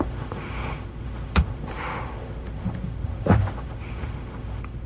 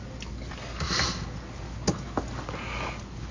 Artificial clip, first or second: first